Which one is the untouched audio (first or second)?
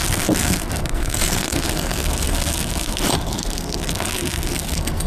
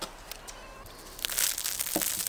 second